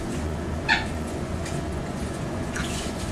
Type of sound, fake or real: fake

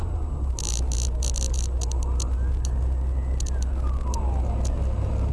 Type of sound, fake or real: real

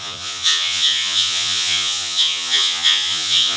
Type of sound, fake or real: fake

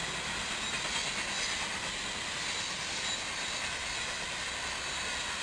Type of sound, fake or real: real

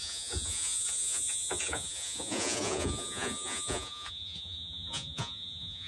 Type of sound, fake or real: fake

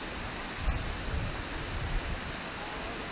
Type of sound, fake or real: real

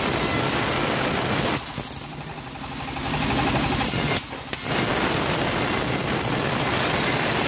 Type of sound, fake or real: real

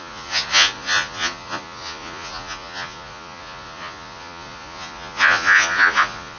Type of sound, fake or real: fake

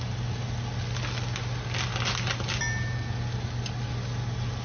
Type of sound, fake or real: real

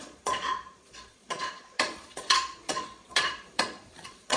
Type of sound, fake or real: fake